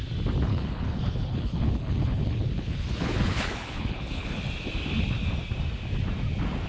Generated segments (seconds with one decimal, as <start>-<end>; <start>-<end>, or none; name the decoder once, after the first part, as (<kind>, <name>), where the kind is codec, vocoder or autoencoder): 0.5-4.4 (codec, HILCodec)